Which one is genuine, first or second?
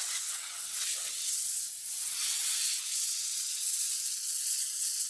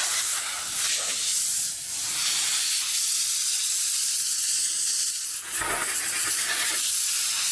second